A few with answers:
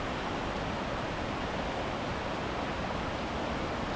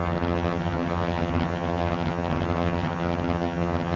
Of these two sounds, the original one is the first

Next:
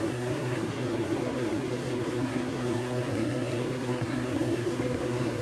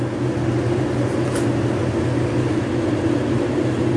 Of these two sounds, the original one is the second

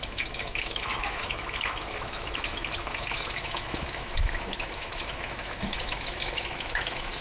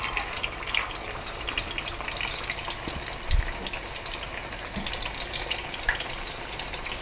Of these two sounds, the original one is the second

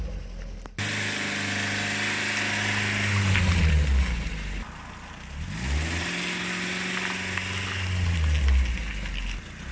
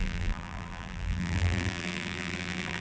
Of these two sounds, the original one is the first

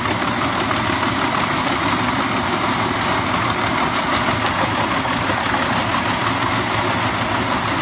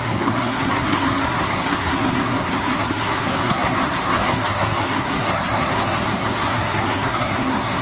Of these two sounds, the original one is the first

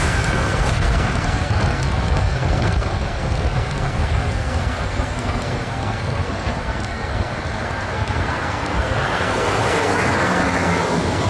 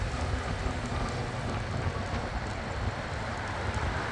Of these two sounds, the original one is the second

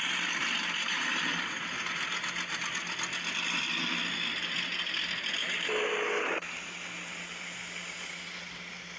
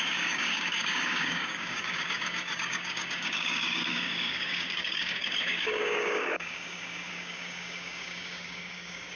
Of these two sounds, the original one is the first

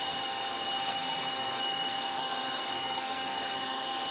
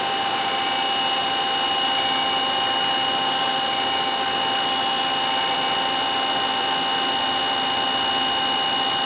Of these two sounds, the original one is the second